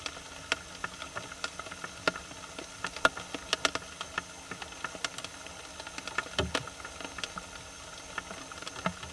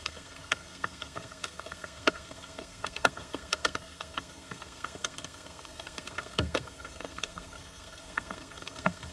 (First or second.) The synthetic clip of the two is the second